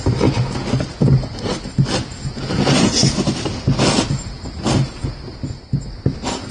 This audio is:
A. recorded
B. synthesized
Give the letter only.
A